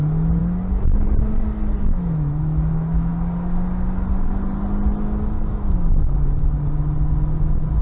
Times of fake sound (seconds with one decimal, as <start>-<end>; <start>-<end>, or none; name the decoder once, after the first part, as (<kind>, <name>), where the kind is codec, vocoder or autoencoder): 0.0-0.4 (autoencoder, DAC-VAE); 1.8-3.1